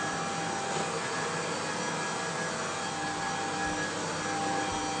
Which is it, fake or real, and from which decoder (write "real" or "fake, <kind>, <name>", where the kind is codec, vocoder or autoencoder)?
real